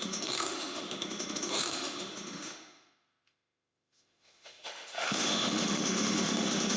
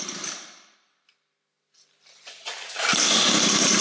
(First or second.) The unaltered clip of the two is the second